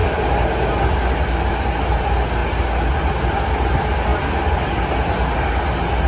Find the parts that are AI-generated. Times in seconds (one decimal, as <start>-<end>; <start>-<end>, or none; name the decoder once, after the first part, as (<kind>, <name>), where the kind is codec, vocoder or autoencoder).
none